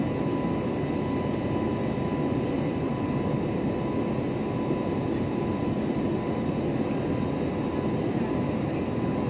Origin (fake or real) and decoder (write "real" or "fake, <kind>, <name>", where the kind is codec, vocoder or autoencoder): real